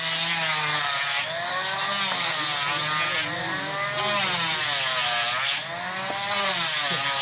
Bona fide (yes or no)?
yes